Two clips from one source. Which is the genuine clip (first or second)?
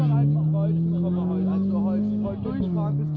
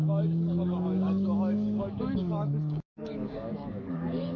first